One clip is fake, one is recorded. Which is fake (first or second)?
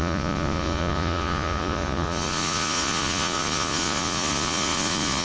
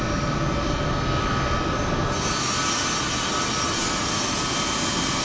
first